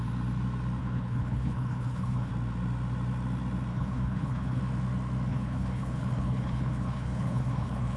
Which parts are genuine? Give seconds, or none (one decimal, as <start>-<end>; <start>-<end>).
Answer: 0.0-0.8; 2.3-3.7; 4.6-5.3